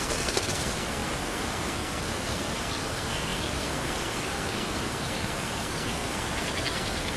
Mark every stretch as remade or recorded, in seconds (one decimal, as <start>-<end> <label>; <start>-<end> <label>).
0.0-7.2 remade